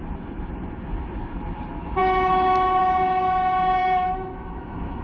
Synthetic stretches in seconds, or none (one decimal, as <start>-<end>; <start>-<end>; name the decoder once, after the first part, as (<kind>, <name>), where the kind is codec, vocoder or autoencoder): 3.8-5.0 (autoencoder, DAC-VAE)